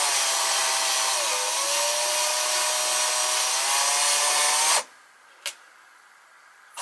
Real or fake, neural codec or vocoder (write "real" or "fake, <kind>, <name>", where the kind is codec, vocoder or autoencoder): real